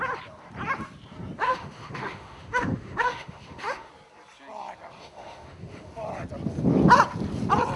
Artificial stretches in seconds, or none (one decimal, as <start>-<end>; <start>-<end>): 1.4-3.9; 5.0-5.9